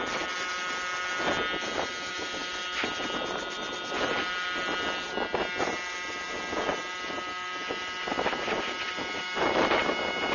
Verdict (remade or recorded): recorded